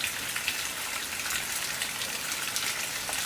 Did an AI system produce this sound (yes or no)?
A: no